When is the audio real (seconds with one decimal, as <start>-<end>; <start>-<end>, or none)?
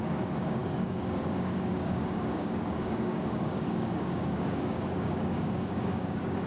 none